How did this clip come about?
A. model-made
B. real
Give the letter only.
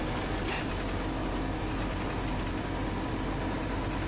B